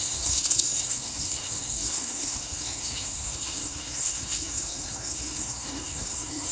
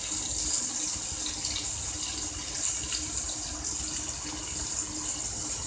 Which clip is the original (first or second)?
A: second